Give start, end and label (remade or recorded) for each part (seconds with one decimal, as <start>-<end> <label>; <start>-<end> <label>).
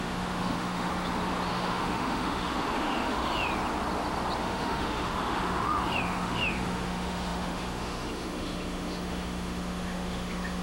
0.0-0.9 remade; 0.9-1.5 recorded; 1.5-3.5 remade; 3.5-4.4 recorded; 4.4-10.6 remade